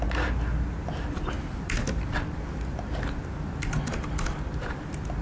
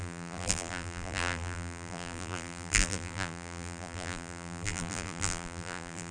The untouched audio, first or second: first